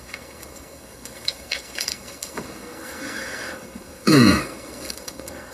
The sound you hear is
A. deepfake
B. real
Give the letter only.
A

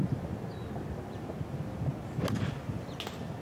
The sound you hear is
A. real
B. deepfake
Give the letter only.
A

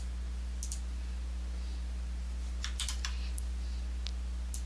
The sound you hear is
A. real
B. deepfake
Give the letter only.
A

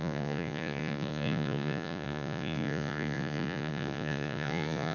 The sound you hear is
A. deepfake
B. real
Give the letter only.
A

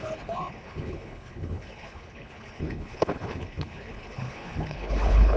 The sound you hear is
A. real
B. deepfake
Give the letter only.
B